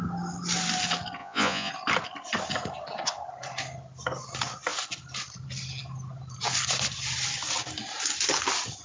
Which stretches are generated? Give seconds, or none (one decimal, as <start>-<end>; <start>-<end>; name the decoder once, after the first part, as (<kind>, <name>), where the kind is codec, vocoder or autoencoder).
1.2-1.7 (vocoder, Vocos)